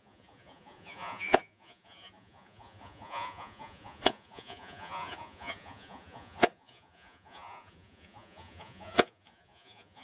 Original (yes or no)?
no